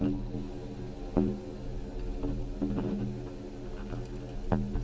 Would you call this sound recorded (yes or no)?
yes